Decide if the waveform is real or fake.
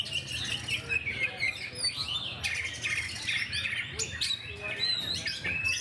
real